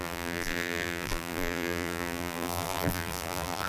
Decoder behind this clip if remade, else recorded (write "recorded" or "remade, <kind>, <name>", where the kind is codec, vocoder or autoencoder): remade, vocoder, BigVGAN v2